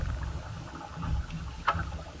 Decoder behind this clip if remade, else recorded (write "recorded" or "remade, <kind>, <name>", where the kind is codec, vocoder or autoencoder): recorded